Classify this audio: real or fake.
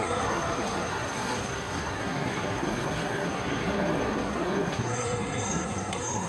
fake